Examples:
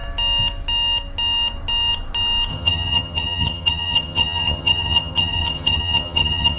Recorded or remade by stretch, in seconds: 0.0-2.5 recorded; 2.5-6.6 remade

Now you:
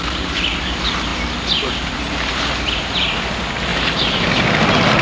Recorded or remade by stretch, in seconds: 0.0-3.7 recorded; 3.7-4.3 remade; 4.3-5.0 recorded

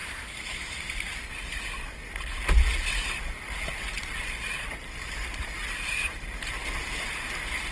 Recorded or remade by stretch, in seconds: 0.0-0.8 remade; 0.8-7.7 recorded

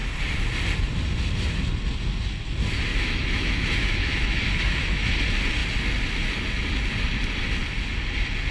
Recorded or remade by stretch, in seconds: 0.0-2.9 recorded; 2.9-5.1 remade; 5.1-8.5 recorded

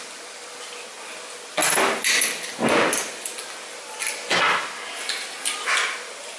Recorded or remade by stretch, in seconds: 0.0-6.4 recorded

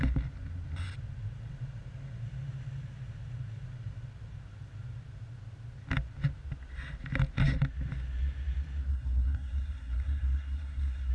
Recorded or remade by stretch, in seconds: 0.0-8.9 recorded; 8.9-11.1 remade

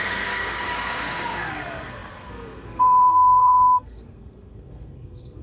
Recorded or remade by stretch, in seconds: 0.0-5.4 remade

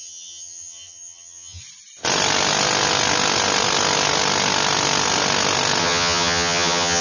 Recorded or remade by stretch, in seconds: 0.0-1.6 remade; 1.6-5.8 recorded; 5.8-7.0 remade